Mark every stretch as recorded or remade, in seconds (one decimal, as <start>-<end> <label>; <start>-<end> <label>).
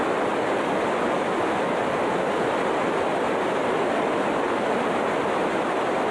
0.0-6.1 recorded